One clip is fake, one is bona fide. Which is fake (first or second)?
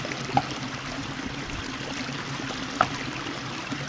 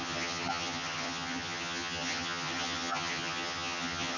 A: second